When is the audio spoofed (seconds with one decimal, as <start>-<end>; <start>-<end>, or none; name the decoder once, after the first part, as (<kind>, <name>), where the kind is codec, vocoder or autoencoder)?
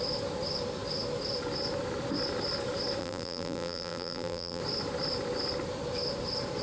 3.0-4.6 (vocoder, BigVGAN v2)